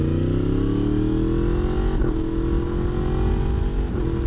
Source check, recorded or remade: recorded